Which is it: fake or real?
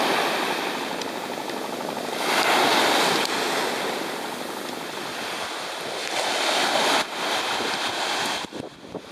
real